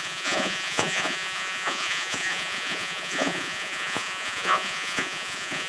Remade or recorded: remade